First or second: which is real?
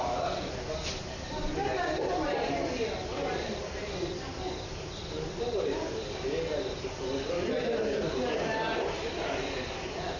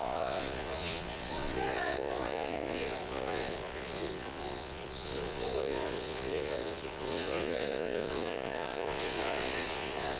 first